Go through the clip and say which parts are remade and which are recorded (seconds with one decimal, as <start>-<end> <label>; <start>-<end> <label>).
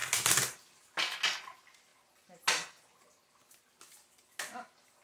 0.0-5.0 recorded